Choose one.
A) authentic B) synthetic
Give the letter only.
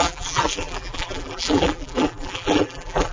B